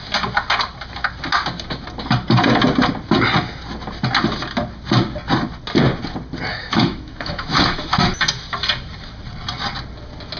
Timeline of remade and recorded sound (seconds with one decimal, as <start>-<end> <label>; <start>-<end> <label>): 0.0-6.5 recorded; 6.5-8.1 remade; 8.1-10.4 recorded